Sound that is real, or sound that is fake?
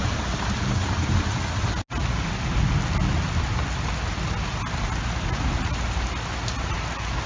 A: real